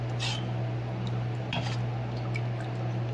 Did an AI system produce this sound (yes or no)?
no